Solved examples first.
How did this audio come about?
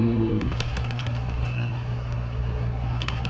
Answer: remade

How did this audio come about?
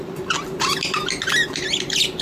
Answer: recorded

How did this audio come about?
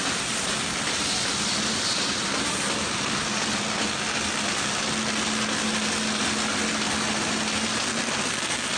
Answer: recorded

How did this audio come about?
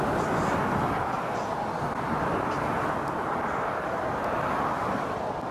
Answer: recorded